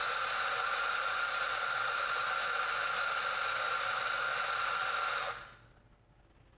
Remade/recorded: recorded